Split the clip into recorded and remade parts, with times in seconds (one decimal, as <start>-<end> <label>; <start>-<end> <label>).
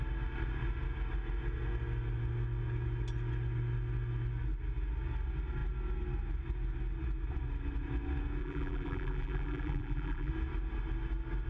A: 0.0-8.4 recorded; 8.4-10.3 remade; 10.3-11.5 recorded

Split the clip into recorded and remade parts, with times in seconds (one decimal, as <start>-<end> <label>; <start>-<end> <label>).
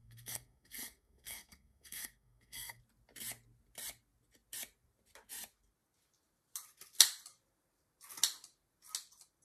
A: 0.0-2.8 remade; 2.8-9.4 recorded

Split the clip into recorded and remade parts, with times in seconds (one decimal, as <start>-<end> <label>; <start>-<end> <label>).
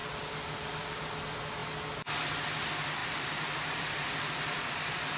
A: 0.0-1.0 remade; 1.0-3.0 recorded; 3.0-5.2 remade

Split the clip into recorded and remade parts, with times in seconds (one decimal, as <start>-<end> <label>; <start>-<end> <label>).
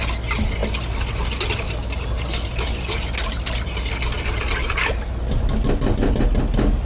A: 0.0-6.8 recorded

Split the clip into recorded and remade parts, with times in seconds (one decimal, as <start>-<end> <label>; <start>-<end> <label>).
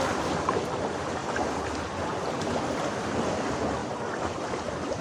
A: 0.0-1.2 recorded; 1.2-3.1 remade; 3.1-3.8 recorded; 3.8-5.0 remade